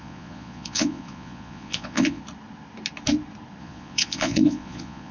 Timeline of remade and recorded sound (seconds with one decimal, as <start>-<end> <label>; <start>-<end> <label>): 0.0-2.2 remade; 2.2-3.6 recorded; 3.6-5.1 remade